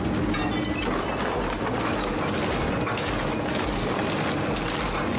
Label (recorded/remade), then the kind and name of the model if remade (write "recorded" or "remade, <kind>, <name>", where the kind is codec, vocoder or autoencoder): recorded